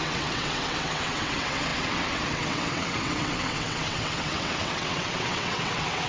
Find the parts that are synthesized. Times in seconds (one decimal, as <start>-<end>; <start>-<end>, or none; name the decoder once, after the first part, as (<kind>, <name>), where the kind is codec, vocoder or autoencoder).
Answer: 0.0-6.1 (vocoder, WaveNeXt)